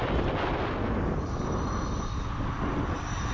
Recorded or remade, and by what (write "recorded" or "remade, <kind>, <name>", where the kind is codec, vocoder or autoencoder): recorded